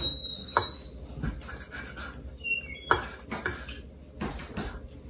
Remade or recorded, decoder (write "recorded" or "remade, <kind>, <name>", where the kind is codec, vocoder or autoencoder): recorded